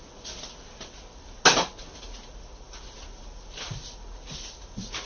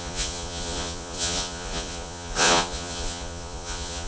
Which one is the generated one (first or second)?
second